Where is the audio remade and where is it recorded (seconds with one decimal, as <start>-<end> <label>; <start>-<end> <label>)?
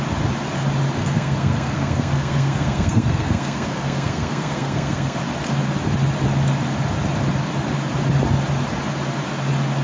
0.0-1.0 recorded; 1.0-5.2 remade; 5.2-9.8 recorded